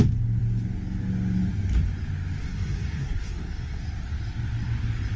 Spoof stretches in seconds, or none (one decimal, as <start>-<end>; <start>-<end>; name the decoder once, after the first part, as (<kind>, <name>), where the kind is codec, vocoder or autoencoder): 2.4-3.8 (codec, SNAC)